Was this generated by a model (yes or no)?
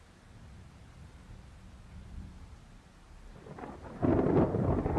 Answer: no